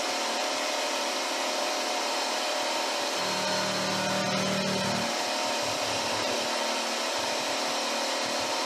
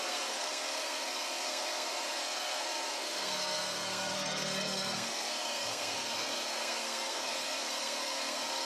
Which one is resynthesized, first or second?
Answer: second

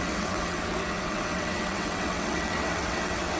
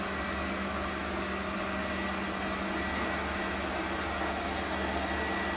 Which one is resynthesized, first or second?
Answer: first